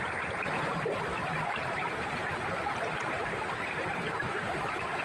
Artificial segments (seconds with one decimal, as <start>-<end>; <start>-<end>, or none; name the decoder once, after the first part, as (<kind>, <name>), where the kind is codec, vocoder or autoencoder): 0.0-2.2 (vocoder, BigVGAN v2); 3.5-5.0